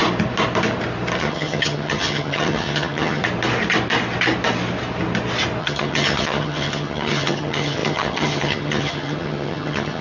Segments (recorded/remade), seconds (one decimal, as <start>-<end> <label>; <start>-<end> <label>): 0.0-1.2 recorded; 1.2-3.2 remade; 3.2-5.6 recorded; 5.6-10.0 remade

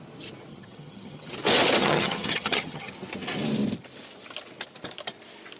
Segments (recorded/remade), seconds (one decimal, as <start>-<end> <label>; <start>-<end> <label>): 0.0-0.5 recorded; 0.5-1.3 remade; 1.3-1.8 recorded; 1.8-2.9 remade; 2.9-5.6 recorded

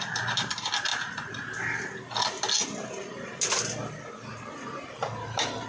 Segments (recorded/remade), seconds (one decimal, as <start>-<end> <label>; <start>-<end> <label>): 0.0-5.7 recorded

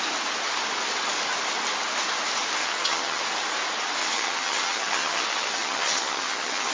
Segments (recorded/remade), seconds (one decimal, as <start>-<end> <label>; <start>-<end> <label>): 0.0-2.6 recorded; 2.6-3.2 remade; 3.2-4.0 recorded; 4.0-6.7 remade

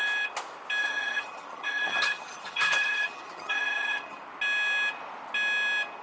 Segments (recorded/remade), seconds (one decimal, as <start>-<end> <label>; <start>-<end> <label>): 0.0-0.8 recorded; 0.8-4.2 remade; 4.2-6.0 recorded

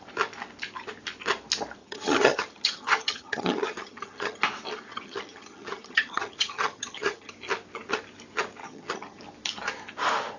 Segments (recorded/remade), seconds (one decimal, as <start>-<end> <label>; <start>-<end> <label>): 0.0-1.8 recorded; 1.8-4.4 remade; 4.4-4.9 recorded; 4.9-7.3 remade; 7.3-8.6 recorded; 8.6-9.2 remade; 9.2-10.4 recorded

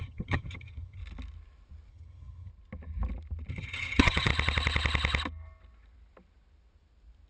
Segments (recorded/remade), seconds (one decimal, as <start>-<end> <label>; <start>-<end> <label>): 0.0-1.0 remade; 1.0-1.9 recorded; 1.9-2.5 remade; 2.5-3.5 recorded; 3.5-4.3 remade; 4.3-7.3 recorded

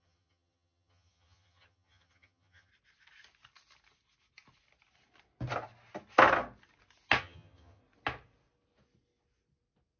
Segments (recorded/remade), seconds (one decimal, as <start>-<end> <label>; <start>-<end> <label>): 0.0-2.7 remade; 2.7-7.2 recorded; 7.2-7.8 remade; 7.8-10.0 recorded